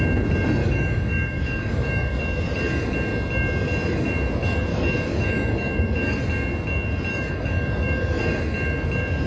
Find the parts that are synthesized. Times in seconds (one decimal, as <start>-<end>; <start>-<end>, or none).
0.6-2.2; 4.7-6.2; 7.1-8.2